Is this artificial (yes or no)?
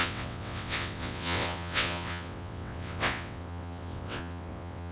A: yes